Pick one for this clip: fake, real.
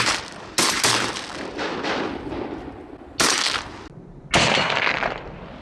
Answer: real